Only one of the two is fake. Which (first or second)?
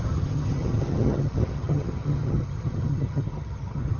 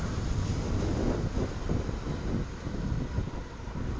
first